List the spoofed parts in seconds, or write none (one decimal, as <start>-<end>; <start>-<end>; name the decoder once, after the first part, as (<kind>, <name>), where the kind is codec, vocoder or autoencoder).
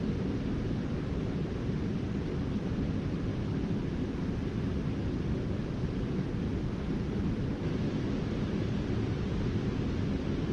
none